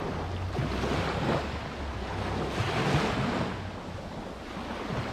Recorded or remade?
recorded